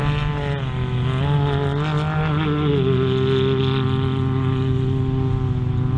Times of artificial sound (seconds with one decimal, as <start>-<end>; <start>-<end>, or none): none